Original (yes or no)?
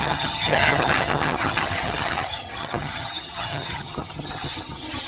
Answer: no